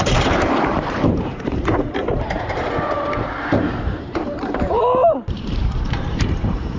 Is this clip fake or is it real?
fake